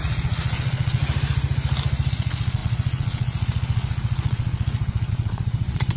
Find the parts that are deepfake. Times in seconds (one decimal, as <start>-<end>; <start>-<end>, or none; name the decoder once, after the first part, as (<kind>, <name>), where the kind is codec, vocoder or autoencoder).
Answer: 0.0-1.0 (vocoder, Vocos); 2.1-6.0